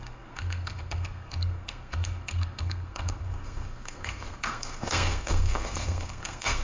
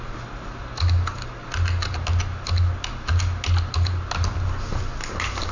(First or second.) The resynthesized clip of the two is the first